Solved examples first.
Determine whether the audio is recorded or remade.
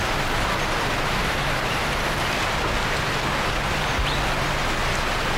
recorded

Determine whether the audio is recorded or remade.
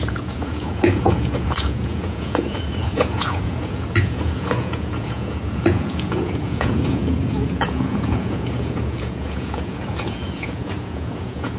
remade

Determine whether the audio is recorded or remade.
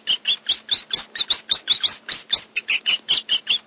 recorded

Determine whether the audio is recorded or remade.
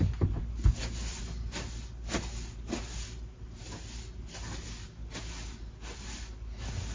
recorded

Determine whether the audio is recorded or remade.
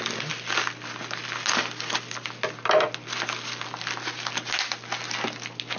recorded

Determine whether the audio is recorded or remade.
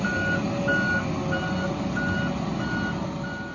recorded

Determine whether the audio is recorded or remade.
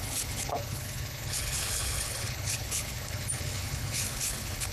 remade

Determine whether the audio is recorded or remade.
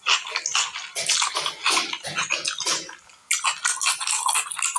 recorded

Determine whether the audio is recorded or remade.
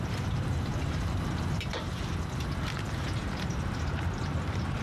remade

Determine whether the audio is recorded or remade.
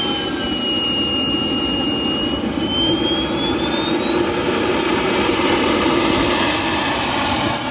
recorded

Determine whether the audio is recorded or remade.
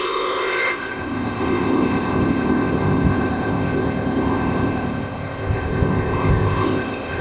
remade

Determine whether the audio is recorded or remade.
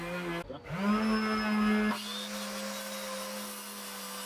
recorded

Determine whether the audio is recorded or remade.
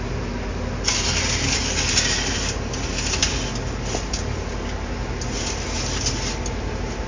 recorded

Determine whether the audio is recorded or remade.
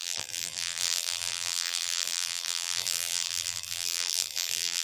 remade